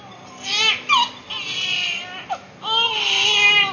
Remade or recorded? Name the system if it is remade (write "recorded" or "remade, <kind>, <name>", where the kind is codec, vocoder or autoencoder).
recorded